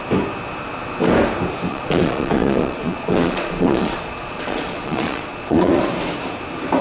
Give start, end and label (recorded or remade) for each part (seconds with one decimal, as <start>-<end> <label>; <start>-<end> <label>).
0.0-1.7 recorded; 1.7-5.8 remade; 5.8-6.8 recorded